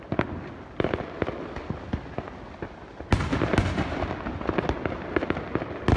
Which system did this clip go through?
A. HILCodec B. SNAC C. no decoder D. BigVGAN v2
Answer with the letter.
C